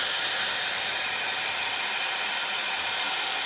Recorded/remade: recorded